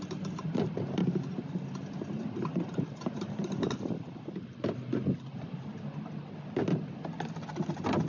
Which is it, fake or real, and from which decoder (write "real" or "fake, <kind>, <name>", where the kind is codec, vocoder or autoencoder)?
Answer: real